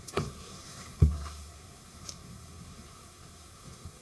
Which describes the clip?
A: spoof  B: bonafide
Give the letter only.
A